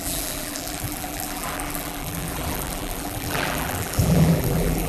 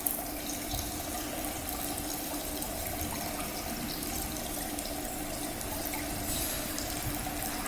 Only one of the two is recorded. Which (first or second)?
second